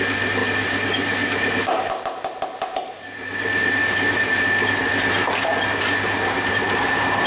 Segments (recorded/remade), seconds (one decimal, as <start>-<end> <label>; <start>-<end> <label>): 0.0-7.3 recorded